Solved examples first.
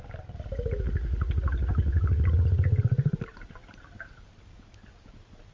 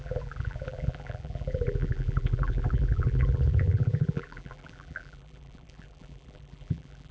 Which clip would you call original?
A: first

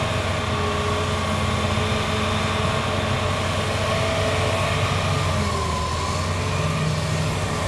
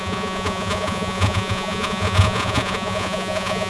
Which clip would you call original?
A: first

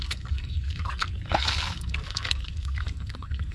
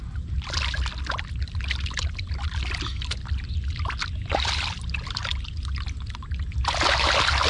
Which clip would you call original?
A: second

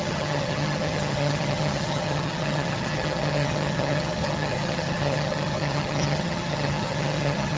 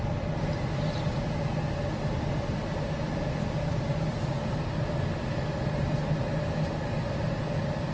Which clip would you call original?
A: second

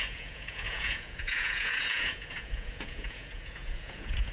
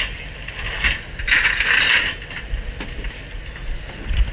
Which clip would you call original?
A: second